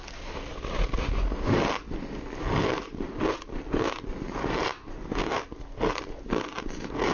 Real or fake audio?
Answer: real